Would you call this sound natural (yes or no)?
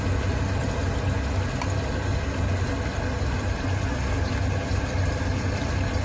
yes